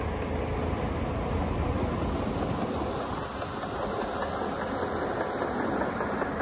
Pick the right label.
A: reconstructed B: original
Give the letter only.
B